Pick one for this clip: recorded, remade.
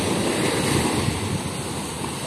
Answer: recorded